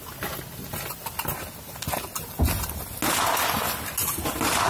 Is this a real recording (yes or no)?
yes